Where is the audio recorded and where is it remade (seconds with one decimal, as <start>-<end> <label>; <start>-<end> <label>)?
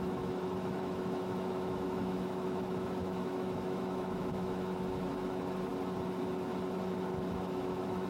0.0-5.7 remade; 5.7-7.3 recorded; 7.3-8.1 remade